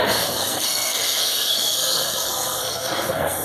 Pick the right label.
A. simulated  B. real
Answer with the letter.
A